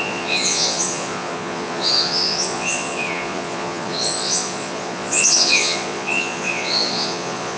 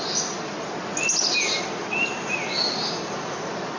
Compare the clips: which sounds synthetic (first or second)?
first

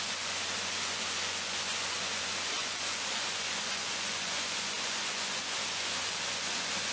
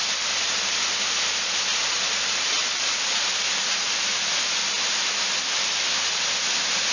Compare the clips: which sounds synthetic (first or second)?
first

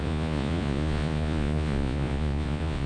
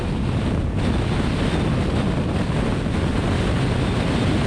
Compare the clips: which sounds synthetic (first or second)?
first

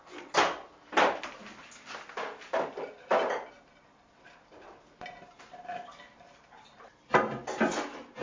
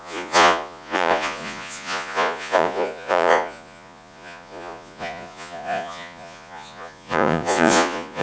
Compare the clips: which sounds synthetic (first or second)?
second